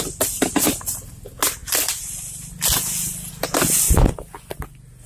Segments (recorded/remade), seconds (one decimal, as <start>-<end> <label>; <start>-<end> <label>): 0.0-5.1 recorded